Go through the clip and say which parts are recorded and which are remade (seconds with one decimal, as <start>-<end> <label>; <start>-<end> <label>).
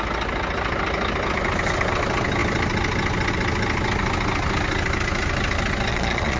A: 0.0-5.9 recorded; 5.9-6.4 remade